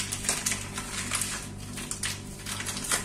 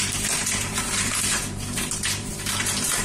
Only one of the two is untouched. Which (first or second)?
first